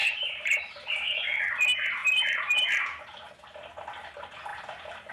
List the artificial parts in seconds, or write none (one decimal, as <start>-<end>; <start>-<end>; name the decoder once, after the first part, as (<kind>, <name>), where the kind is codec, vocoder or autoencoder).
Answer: 0.0-1.4 (vocoder, BigVGAN v2); 2.0-2.7; 4.5-5.1